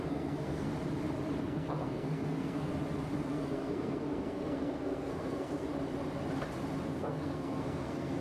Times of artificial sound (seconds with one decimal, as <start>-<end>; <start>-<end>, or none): 0.0-0.7; 1.4-2.7; 3.3-5.7; 6.9-8.2